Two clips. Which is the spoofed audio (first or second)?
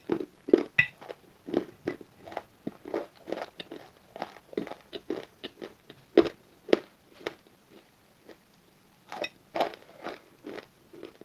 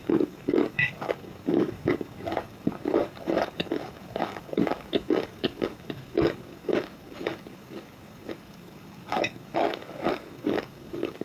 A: second